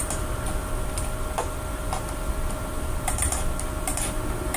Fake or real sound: fake